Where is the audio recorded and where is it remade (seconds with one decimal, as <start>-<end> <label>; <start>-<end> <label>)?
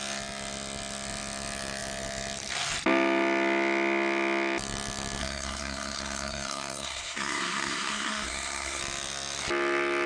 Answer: 0.0-5.2 recorded; 5.2-8.8 remade; 8.8-10.1 recorded